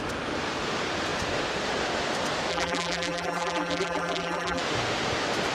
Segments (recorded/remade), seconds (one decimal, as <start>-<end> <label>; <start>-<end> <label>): 0.0-2.5 recorded; 2.5-4.6 remade; 4.6-5.5 recorded

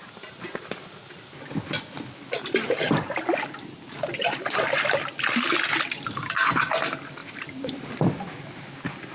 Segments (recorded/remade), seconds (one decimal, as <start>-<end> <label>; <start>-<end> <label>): 0.0-7.2 recorded; 7.2-7.7 remade; 7.7-9.1 recorded

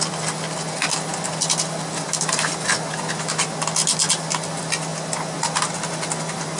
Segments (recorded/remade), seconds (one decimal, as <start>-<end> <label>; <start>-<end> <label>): 0.0-6.6 recorded